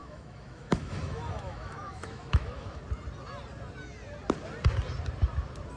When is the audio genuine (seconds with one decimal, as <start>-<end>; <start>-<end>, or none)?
2.8-5.8

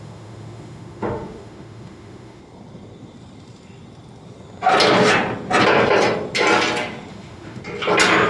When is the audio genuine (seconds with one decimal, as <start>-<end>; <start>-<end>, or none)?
2.4-7.1; 7.6-8.3

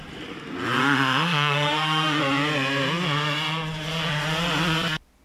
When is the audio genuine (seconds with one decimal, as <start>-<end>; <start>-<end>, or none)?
0.0-0.8; 2.2-5.2

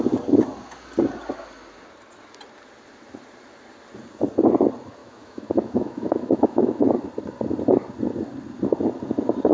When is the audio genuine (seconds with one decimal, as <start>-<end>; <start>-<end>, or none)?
0.0-5.0; 6.8-9.5

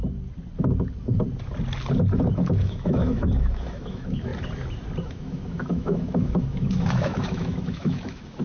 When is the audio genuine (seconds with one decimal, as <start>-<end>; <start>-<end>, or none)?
0.0-2.3; 4.3-5.0

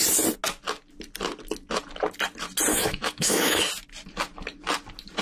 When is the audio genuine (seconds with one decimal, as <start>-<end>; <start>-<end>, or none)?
0.0-2.7; 3.7-5.2

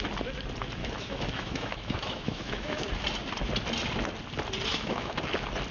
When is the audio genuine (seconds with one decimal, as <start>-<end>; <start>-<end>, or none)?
0.0-0.8; 2.9-4.7; 5.2-5.7

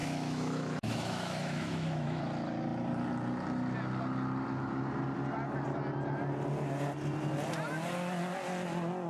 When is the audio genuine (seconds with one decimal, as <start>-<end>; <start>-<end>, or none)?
2.2-9.1